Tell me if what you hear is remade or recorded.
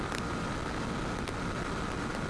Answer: recorded